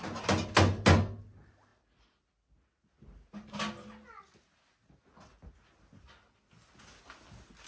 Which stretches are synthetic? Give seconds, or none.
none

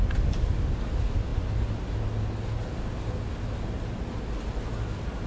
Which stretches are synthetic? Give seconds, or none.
none

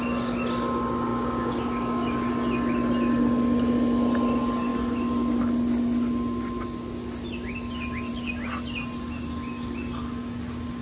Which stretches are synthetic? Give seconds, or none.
1.1-2.3 (codec, DAC)